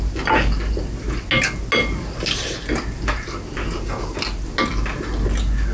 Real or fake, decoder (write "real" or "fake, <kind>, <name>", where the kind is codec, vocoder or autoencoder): real